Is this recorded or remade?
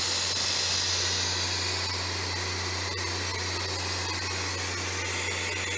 recorded